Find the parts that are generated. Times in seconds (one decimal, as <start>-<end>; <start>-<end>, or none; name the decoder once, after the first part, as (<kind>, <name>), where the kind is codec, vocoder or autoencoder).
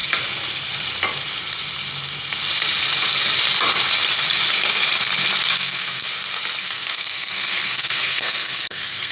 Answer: 5.5-6.0 (codec, SNAC); 6.6-9.1